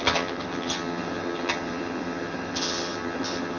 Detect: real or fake fake